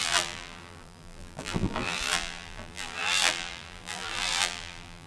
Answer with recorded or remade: remade